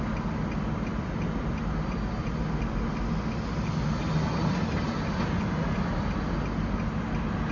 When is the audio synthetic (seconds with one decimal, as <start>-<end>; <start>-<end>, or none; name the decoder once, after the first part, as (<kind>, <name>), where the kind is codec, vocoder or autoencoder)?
none